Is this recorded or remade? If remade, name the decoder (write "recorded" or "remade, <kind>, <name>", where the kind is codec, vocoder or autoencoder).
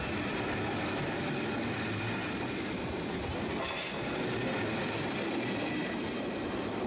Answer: recorded